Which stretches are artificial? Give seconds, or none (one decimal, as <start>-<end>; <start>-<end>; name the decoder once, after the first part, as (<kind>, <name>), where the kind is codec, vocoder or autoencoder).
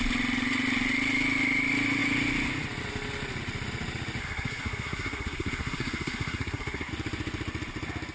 4.2-6.9 (codec, SNAC)